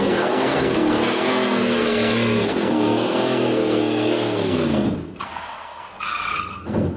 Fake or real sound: fake